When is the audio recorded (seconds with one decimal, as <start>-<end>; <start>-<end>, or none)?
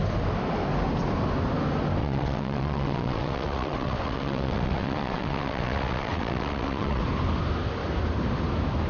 0.0-2.0; 7.0-8.9